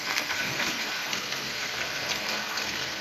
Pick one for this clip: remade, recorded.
remade